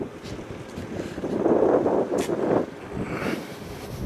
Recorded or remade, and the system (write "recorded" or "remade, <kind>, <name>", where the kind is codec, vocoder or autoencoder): recorded